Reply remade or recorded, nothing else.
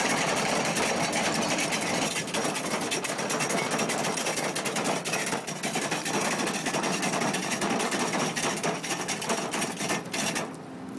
recorded